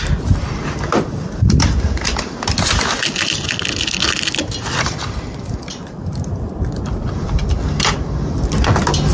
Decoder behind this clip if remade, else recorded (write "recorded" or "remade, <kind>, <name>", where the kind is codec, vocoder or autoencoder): recorded